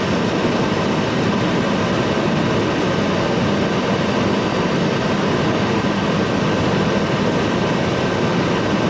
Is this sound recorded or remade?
recorded